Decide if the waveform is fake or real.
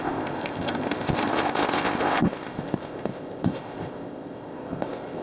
fake